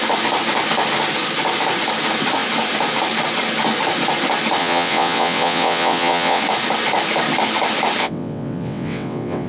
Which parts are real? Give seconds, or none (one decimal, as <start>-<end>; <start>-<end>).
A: 0.0-4.6; 6.4-8.0